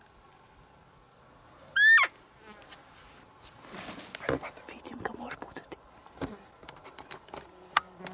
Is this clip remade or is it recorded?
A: recorded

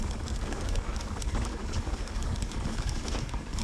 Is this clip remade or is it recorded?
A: remade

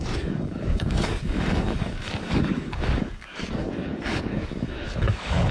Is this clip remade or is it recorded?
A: remade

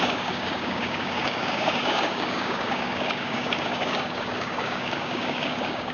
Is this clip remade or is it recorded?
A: remade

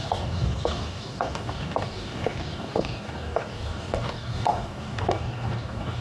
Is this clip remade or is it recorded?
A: remade